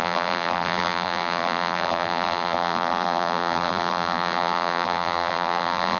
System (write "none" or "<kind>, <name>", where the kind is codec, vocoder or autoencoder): vocoder, BigVGAN v2